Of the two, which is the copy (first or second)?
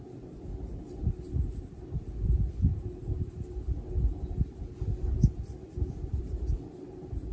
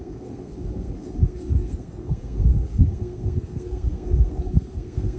second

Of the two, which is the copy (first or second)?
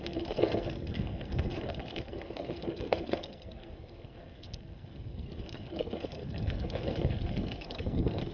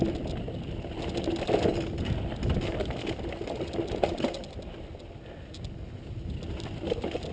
first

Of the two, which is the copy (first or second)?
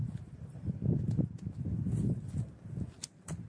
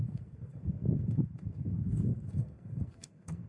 second